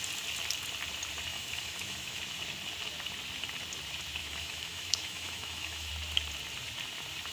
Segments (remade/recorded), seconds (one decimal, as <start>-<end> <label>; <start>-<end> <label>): 0.0-1.3 recorded; 1.3-2.2 remade; 2.2-4.2 recorded; 4.2-5.9 remade; 5.9-7.3 recorded